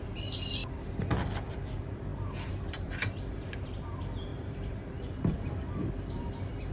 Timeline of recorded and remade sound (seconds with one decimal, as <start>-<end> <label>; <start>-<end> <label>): 0.0-6.7 remade